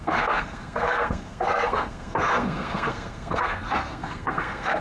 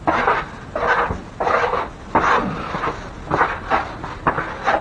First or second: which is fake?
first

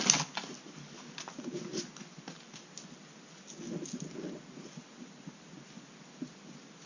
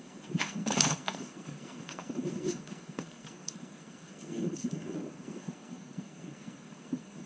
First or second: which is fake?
second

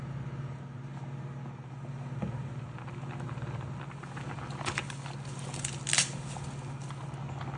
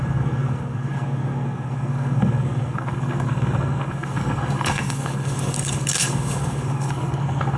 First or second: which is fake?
second